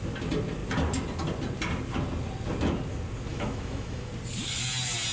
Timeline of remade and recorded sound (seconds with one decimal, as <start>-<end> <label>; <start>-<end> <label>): 0.0-3.3 recorded; 3.3-4.1 remade; 4.1-5.1 recorded